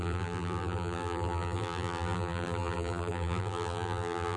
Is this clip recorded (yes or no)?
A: no